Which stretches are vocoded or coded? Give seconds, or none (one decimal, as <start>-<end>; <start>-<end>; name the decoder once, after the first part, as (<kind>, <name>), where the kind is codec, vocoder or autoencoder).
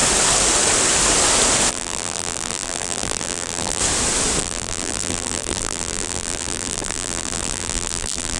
1.7-3.8 (vocoder, BigVGAN v2); 4.4-8.4